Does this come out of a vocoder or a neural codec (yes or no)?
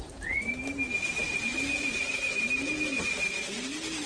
no